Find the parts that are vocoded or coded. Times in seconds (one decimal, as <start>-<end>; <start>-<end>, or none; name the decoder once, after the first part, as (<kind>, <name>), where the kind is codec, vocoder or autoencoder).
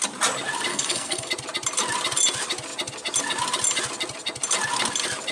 0.7-1.3 (codec, SNAC)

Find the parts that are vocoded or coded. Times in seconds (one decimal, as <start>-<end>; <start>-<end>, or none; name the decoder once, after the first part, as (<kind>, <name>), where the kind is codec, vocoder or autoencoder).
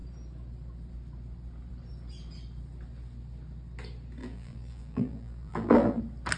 4.2-6.0 (vocoder, BigVGAN v2)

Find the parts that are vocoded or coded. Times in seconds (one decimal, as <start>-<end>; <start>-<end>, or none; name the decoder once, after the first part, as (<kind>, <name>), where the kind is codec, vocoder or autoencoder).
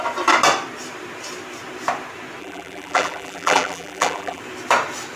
2.4-4.4 (vocoder, BigVGAN v2)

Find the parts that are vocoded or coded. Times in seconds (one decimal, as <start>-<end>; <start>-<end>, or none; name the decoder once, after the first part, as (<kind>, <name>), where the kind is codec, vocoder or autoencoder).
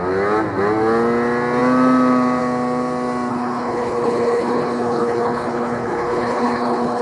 3.3-7.0 (codec, HILCodec)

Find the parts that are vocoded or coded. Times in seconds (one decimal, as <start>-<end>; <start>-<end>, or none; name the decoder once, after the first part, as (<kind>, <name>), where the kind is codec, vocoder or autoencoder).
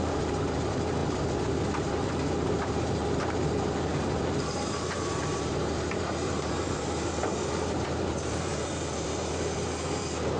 0.0-10.4 (vocoder, BigVGAN v2)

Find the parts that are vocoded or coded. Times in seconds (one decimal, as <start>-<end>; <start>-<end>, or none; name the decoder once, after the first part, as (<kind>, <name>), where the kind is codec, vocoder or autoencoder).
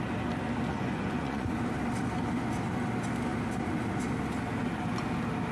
0.7-1.5 (vocoder, Vocos)